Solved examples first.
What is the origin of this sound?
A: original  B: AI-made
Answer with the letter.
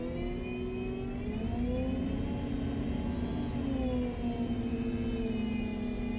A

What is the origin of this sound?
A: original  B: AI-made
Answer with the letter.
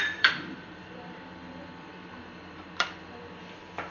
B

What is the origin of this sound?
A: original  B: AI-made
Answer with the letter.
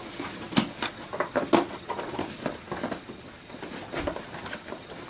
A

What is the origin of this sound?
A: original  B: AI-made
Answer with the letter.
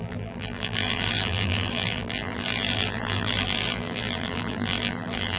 B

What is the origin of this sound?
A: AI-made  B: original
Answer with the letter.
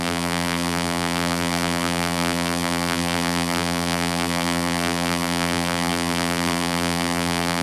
A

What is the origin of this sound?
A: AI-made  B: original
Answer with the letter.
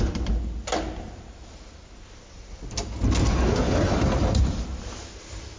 B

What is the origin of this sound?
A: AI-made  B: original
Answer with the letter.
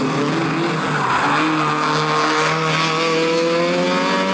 B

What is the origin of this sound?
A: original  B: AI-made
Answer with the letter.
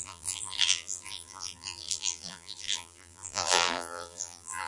B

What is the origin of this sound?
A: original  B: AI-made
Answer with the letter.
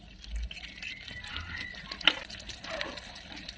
A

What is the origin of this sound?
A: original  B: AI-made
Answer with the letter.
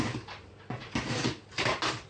A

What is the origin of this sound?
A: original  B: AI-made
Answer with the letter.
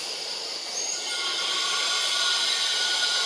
A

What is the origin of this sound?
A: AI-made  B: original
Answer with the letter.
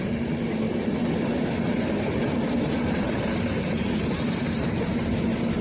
A